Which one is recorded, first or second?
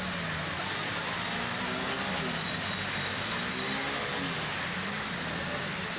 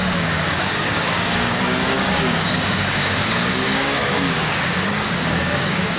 first